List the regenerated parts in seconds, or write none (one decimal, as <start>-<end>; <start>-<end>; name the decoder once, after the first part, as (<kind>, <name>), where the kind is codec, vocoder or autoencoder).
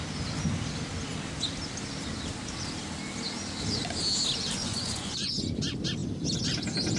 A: 4.6-5.4 (vocoder, Vocos)